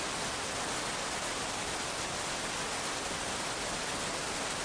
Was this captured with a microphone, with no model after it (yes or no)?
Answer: yes